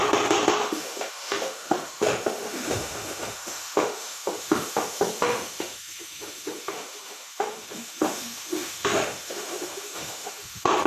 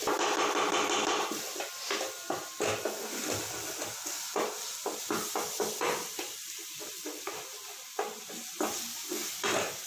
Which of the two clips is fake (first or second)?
first